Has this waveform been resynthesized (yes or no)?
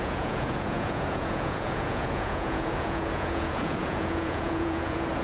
yes